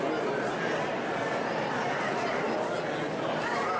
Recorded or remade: recorded